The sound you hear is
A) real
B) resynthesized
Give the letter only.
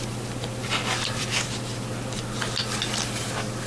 A